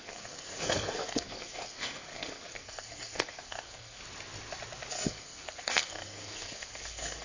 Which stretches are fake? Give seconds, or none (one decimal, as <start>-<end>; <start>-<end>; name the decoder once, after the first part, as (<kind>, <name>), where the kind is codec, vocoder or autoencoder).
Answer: 0.0-4.0 (codec, SNAC); 4.9-7.2